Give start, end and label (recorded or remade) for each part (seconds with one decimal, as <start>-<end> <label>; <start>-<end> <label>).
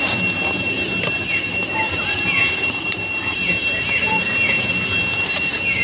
0.0-5.8 recorded